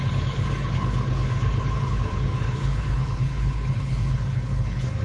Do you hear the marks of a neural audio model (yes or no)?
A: yes